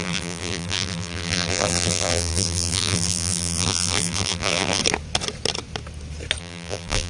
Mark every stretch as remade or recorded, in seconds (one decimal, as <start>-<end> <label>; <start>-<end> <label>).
0.0-4.8 remade; 4.8-6.4 recorded; 6.4-7.1 remade